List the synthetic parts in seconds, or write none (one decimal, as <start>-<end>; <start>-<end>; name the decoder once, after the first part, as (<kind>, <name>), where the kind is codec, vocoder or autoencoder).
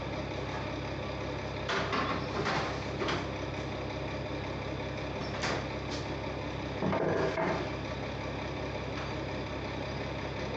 none